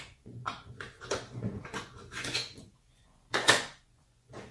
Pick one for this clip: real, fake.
fake